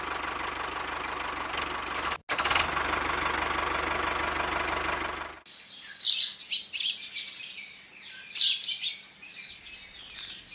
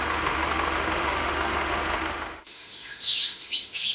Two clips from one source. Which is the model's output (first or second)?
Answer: second